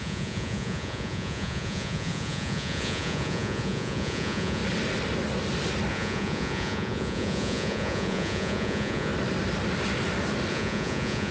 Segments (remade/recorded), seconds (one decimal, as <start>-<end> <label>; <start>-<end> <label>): 0.0-4.6 remade; 4.6-5.9 recorded; 5.9-9.1 remade; 9.1-10.5 recorded; 10.5-11.3 remade